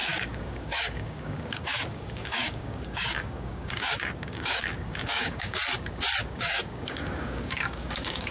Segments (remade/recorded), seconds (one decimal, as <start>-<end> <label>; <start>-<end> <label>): 0.0-5.6 remade; 5.6-6.2 recorded; 6.2-8.3 remade